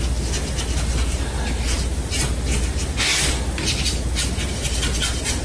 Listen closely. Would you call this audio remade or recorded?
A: recorded